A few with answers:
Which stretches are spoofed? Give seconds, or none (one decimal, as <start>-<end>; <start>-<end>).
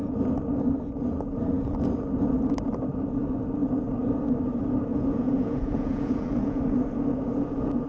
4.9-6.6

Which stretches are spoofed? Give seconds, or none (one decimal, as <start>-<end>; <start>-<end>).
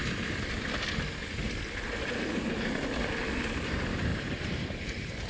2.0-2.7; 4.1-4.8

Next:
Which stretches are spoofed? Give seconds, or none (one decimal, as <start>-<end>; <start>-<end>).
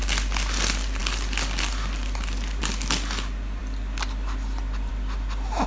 none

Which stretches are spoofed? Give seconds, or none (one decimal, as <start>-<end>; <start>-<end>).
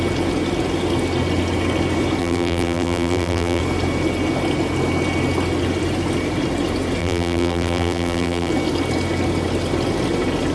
2.2-3.6; 7.0-8.5